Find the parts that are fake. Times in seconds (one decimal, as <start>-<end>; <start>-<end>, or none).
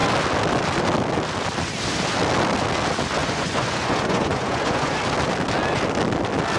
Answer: 3.2-5.0